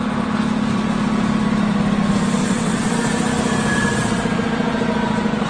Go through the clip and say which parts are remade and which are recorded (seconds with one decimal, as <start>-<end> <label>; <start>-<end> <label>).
0.0-2.4 recorded; 2.4-3.1 remade; 3.1-5.5 recorded